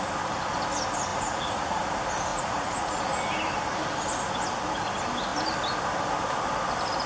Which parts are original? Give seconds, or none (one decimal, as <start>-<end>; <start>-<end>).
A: 0.0-1.1; 1.8-2.3; 3.0-7.1